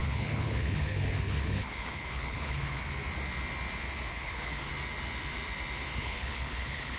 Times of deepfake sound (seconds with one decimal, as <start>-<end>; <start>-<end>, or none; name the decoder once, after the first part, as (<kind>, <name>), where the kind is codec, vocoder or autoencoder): 0.0-2.8 (codec, HILCodec); 4.1-4.7; 6.0-7.0